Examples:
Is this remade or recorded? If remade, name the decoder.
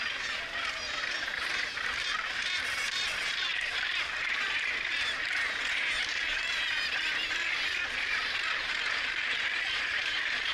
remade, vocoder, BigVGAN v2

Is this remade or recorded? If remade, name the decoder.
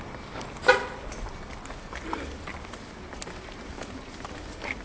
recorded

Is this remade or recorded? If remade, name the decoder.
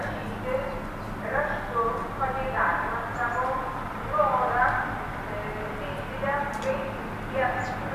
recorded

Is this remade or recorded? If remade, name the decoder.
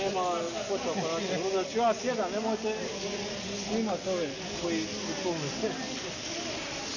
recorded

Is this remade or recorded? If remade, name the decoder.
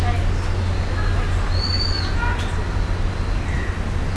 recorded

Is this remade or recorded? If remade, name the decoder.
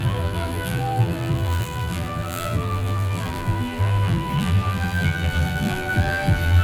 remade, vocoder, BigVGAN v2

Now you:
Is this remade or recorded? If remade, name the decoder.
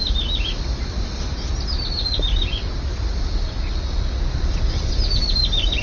recorded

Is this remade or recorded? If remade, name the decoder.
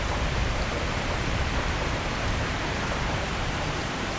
remade, vocoder, BigVGAN v2